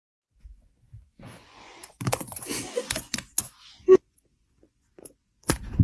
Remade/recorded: remade